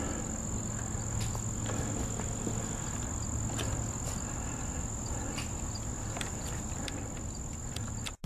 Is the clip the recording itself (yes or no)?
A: yes